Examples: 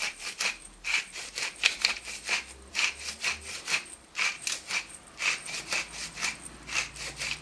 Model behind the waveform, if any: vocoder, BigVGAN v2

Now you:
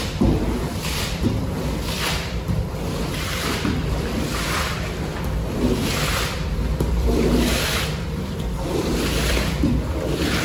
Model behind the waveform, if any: vocoder, BigVGAN v2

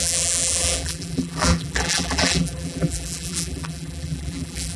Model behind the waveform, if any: vocoder, BigVGAN v2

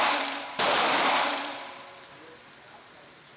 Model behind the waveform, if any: vocoder, BigVGAN v2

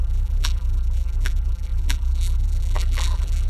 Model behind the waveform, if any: vocoder, BigVGAN v2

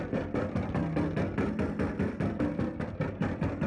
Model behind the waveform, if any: vocoder, BigVGAN v2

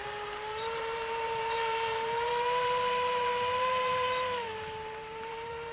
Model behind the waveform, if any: vocoder, BigVGAN v2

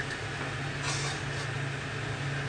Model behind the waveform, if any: none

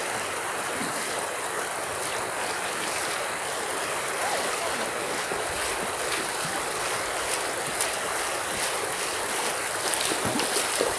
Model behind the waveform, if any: none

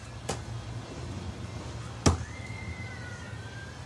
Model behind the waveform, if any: none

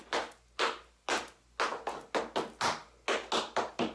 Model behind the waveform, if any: none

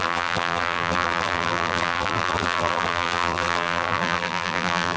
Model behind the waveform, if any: vocoder, BigVGAN v2